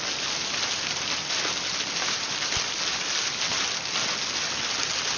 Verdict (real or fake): real